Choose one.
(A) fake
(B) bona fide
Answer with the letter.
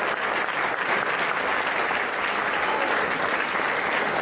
B